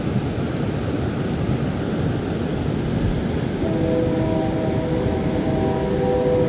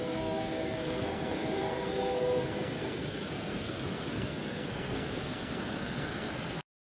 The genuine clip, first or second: first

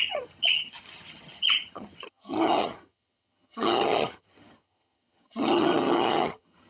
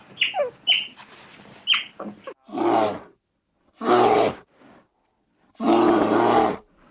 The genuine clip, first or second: second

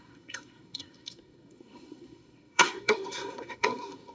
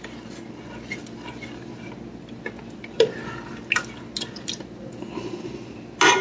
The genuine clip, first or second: second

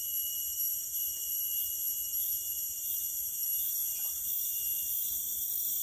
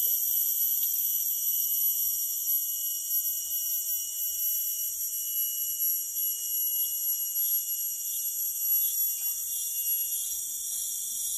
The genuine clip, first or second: second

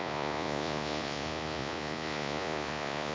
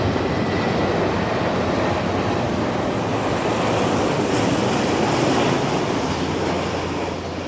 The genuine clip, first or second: second